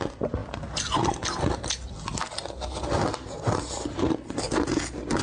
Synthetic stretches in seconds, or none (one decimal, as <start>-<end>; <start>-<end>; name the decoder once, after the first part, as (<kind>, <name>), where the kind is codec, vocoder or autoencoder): none